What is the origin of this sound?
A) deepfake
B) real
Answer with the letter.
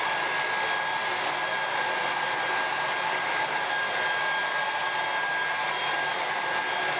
B